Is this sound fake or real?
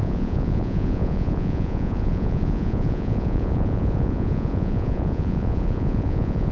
fake